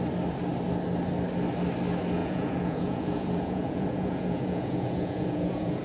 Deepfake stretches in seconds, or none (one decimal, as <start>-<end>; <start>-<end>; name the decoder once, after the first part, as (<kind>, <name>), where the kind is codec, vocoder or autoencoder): 2.2-5.8 (vocoder, Vocos)

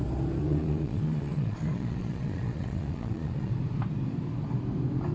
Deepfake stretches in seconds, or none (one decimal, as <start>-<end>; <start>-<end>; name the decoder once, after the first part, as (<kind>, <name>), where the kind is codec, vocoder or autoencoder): 0.4-3.5 (vocoder, Vocos)

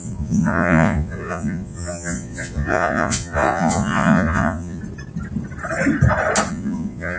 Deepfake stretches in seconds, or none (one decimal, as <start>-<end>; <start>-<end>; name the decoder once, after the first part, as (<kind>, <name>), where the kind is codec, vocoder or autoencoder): 0.0-4.8 (vocoder, Vocos); 6.5-7.2

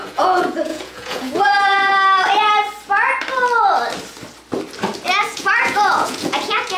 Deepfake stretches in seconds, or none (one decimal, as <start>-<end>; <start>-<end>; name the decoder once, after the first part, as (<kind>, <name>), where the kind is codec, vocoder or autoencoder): 0.0-1.9 (vocoder, Vocos); 5.2-6.8

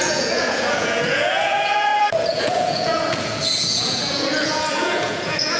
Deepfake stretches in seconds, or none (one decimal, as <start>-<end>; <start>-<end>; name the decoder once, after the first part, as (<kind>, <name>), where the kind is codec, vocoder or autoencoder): 0.0-5.6 (vocoder, Vocos)

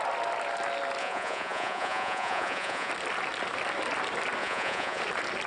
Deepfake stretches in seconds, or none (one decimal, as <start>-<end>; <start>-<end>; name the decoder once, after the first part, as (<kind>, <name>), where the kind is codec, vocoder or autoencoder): 1.0-2.9 (vocoder, Vocos); 4.4-5.0

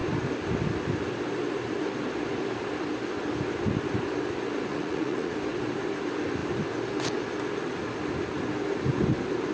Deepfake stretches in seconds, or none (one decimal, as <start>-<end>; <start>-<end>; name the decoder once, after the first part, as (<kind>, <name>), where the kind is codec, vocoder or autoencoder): 4.7-5.3 (vocoder, Vocos)

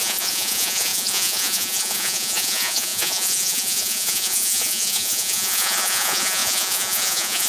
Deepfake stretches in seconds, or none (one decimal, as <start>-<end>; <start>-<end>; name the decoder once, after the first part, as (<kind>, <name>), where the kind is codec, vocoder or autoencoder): 0.0-7.5 (vocoder, Vocos)